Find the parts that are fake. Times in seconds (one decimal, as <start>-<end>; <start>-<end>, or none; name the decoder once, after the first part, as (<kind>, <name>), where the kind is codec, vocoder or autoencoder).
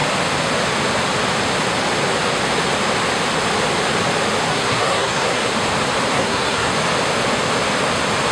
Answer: 4.5-5.5 (codec, SNAC); 6.1-6.7